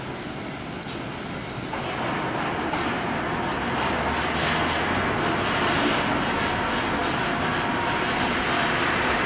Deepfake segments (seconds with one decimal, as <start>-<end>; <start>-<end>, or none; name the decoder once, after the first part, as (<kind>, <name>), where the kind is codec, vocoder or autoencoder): none